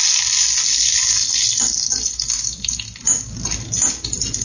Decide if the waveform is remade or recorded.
recorded